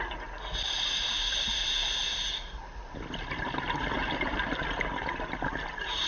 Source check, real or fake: real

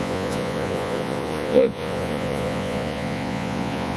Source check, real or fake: fake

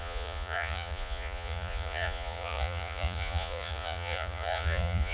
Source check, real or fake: fake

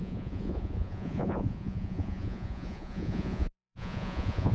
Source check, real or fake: fake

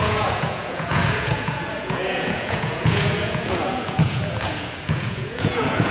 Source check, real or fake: fake